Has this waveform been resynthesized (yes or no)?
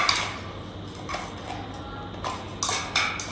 no